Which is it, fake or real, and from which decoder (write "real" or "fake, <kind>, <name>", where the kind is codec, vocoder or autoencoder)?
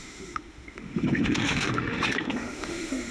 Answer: fake, autoencoder, DAC-VAE